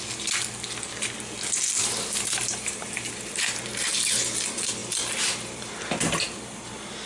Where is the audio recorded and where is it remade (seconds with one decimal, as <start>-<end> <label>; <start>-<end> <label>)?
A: 0.0-1.8 recorded; 1.8-3.8 remade; 3.8-7.1 recorded